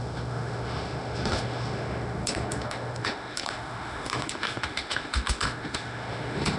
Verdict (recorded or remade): remade